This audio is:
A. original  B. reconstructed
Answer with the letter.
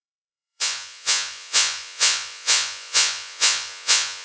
B